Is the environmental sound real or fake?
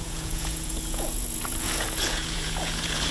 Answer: fake